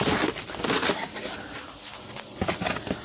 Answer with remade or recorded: remade